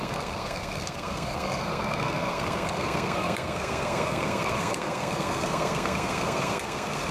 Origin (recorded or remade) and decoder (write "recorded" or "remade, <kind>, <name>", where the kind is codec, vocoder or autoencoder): remade, codec, SNAC